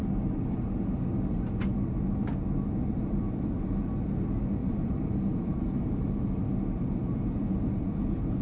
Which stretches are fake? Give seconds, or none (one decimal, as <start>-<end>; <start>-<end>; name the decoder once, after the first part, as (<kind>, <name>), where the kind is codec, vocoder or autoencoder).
4.6-5.5 (vocoder, BigVGAN v2)

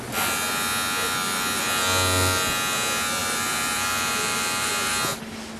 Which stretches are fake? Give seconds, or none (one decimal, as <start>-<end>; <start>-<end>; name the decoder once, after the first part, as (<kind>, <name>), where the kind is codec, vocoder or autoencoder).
3.2-4.7 (vocoder, BigVGAN v2)

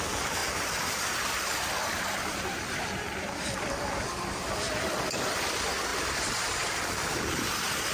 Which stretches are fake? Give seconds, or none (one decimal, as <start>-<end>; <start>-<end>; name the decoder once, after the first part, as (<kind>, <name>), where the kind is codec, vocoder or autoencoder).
0.0-7.9 (vocoder, BigVGAN v2)

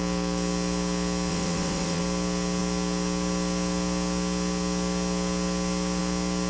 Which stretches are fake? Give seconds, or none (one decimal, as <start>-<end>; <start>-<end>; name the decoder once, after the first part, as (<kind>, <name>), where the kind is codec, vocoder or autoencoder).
1.3-2.0 (vocoder, WaveNeXt)

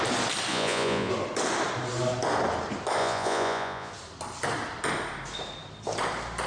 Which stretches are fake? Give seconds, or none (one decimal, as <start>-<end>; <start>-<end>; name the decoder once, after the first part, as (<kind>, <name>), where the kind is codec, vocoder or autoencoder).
0.5-1.1 (vocoder, Vocos); 3.0-3.9

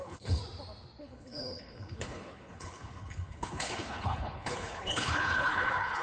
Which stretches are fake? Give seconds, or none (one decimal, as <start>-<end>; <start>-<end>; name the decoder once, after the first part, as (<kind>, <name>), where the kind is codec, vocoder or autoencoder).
0.0-0.4 (codec, HILCodec); 1.0-6.0